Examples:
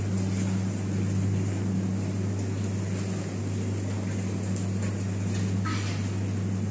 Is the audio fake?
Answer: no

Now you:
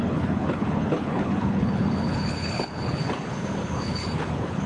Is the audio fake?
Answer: yes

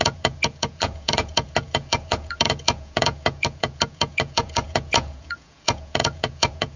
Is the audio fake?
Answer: yes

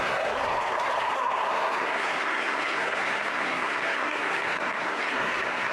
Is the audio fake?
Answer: yes